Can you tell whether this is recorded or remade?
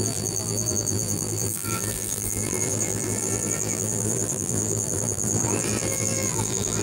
remade